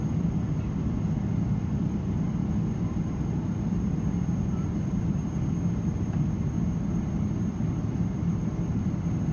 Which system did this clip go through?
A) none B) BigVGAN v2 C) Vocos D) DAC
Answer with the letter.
A